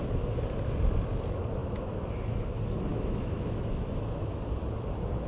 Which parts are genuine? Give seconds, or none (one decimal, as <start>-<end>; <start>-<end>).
0.0-1.6; 2.5-2.9; 4.4-5.3